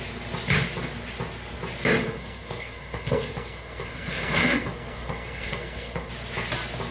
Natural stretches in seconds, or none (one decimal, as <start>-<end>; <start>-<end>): 0.0-2.0; 6.1-6.9